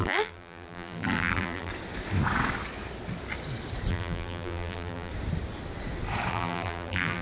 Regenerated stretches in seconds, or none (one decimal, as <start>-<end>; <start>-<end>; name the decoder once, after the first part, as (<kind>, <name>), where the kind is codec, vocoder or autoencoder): 0.0-1.7 (vocoder, BigVGAN v2); 3.9-5.1; 6.3-7.2